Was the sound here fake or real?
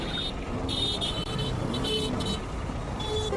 real